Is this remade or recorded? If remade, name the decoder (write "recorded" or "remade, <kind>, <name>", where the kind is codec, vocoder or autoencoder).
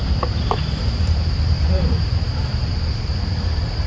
remade, vocoder, BigVGAN v2